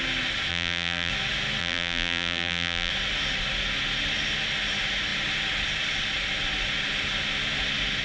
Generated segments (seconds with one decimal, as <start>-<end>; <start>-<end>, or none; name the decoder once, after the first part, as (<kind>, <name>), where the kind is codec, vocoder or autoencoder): 0.5-1.1 (vocoder, BigVGAN v2); 1.6-2.9